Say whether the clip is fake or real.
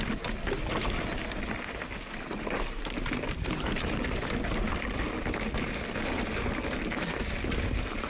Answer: real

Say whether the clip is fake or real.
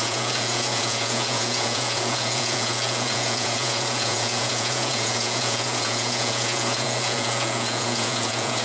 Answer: fake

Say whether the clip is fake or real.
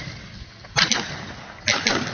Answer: real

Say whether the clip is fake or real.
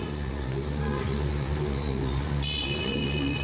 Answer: fake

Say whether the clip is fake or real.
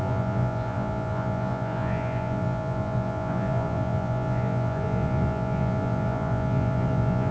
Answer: fake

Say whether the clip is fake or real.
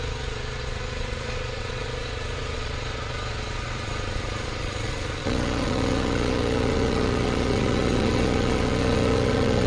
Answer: fake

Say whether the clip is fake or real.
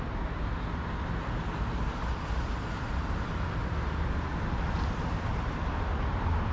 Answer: real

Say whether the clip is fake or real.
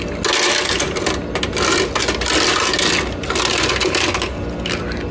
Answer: real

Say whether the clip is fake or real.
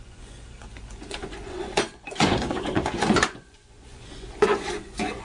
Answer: fake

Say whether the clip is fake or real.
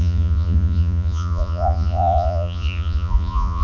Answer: fake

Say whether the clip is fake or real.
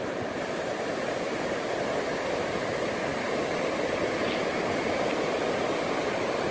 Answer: real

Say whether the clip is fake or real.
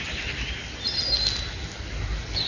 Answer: real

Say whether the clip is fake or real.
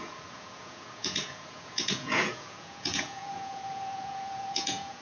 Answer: fake